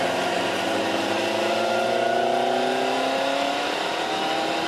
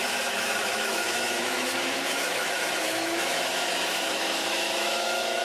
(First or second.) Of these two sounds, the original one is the first